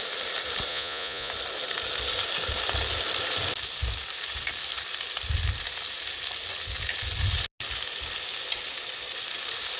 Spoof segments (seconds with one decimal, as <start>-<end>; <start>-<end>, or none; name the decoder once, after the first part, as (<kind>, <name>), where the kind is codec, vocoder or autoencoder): 0.7-1.3 (vocoder, Vocos)